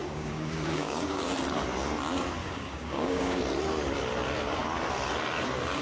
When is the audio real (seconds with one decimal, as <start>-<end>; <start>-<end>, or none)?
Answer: 1.3-2.4; 3.4-5.8